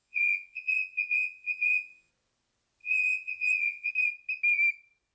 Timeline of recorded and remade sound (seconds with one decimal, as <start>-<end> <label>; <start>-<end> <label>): 0.0-2.1 remade; 2.1-2.8 recorded; 2.8-3.9 remade; 3.9-5.1 recorded